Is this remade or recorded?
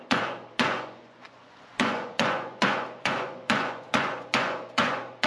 remade